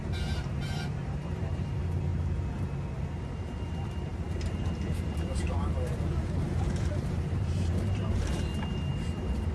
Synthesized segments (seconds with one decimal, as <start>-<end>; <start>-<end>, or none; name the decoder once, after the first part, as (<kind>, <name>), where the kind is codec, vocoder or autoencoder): 0.0-2.1 (vocoder, BigVGAN v2); 3.1-9.5